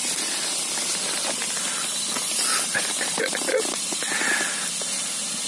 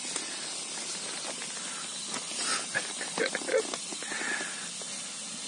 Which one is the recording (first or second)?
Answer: second